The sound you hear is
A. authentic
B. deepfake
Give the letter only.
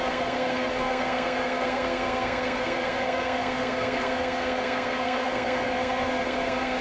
B